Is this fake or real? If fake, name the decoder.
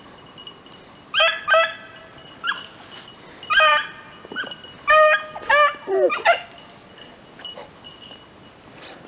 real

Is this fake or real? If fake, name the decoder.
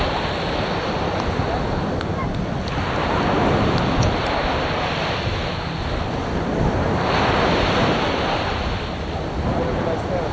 real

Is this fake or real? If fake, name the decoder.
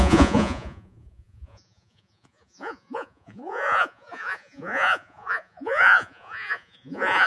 fake, vocoder, Vocos